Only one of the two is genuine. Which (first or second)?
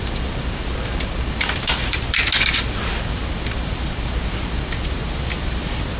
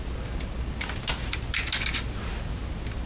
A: second